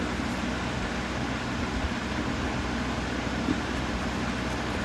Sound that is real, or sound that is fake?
real